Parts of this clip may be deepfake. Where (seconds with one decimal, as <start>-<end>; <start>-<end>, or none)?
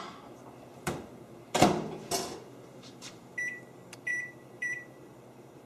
0.7-1.6; 2.7-3.6; 4.1-5.7